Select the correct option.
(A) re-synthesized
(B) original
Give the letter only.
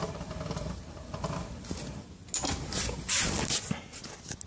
B